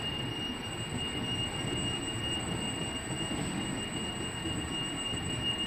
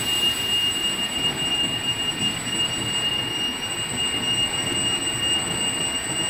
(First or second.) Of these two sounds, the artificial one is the first